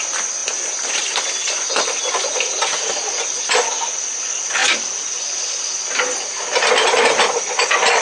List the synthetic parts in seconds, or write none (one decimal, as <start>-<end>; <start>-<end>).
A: none